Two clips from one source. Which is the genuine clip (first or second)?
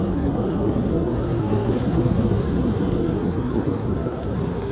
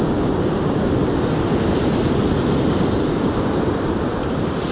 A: second